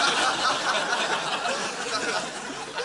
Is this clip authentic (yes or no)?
yes